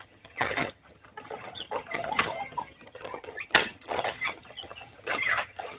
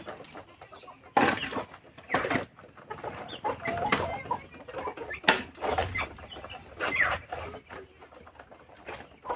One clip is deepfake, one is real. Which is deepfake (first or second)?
first